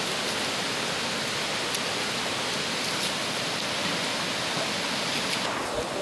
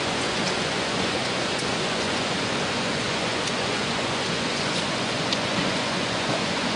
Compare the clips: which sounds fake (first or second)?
second